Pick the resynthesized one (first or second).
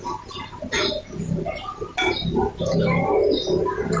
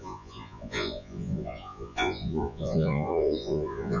second